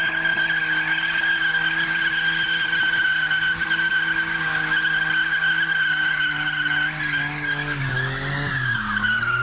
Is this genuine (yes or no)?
yes